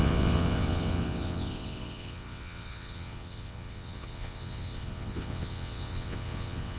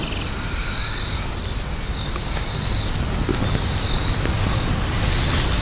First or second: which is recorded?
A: second